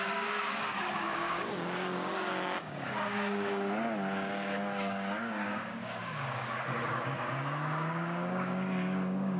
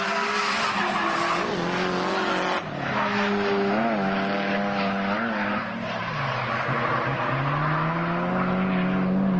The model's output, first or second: first